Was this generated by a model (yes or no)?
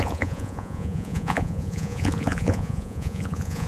yes